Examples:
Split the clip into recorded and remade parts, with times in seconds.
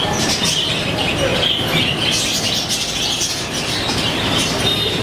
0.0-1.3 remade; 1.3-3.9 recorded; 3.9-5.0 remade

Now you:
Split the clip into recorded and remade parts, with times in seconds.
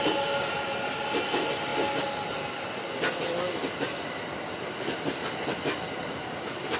0.0-6.8 recorded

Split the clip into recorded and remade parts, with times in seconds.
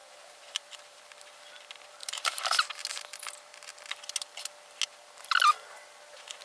0.0-1.0 remade; 1.0-2.0 recorded; 2.0-2.6 remade; 2.6-6.4 recorded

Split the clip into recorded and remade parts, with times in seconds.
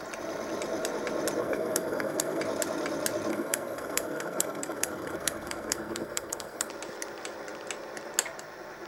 0.0-1.4 recorded; 1.4-2.4 remade; 2.4-3.3 recorded; 3.3-6.7 remade; 6.7-8.9 recorded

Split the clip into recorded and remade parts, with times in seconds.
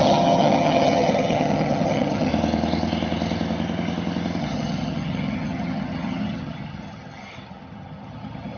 0.0-2.3 remade; 2.3-4.4 recorded; 4.4-8.6 remade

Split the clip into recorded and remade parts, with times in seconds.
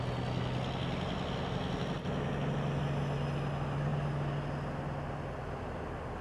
0.0-6.2 recorded